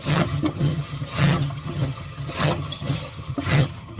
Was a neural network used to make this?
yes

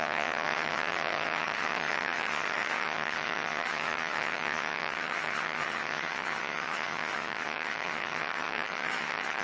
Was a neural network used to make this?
yes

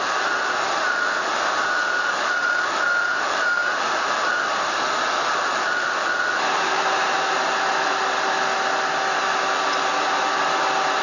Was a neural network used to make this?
no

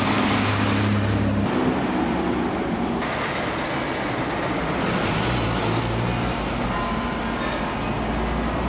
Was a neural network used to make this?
no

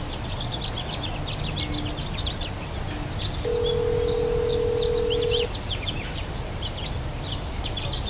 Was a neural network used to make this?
no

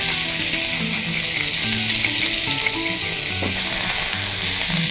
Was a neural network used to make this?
no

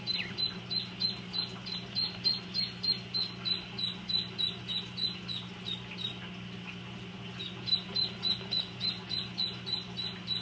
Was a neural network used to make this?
no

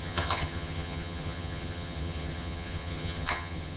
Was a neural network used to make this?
yes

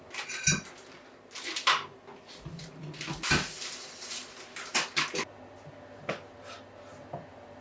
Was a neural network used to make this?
no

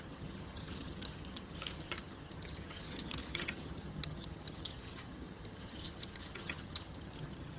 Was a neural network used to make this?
yes